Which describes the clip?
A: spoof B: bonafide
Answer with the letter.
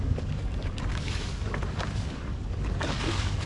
A